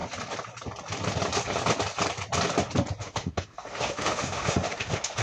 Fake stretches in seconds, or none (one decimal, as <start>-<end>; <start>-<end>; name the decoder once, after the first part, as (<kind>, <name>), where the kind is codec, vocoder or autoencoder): 3.0-5.2 (autoencoder, DAC-VAE)